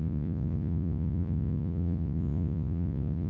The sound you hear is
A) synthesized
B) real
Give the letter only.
A